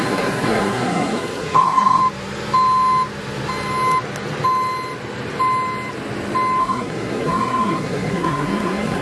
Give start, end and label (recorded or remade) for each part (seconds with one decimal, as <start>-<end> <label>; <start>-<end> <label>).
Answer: 0.0-2.0 remade; 2.0-6.6 recorded; 6.6-9.0 remade